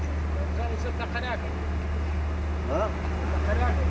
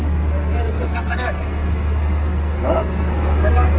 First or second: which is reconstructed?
second